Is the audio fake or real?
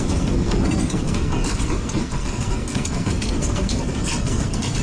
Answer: fake